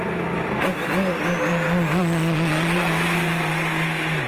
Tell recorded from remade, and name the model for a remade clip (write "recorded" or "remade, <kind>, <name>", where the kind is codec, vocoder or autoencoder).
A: recorded